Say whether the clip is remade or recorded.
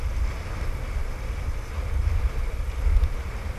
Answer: recorded